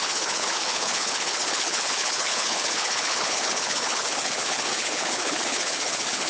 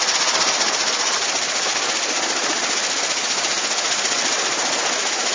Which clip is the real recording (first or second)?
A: second